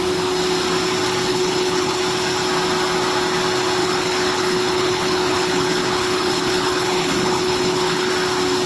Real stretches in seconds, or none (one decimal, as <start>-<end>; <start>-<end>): 0.0-1.3; 2.0-3.8; 8.1-8.7